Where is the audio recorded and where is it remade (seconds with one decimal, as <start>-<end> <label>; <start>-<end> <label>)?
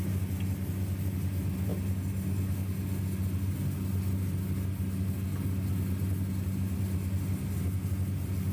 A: 0.0-8.5 recorded